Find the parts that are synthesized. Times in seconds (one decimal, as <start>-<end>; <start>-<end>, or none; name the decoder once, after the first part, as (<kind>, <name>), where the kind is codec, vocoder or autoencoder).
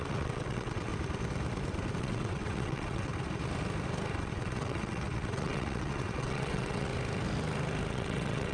0.0-0.9 (vocoder, WaveNeXt); 2.0-3.1; 4.2-6.9; 7.9-8.5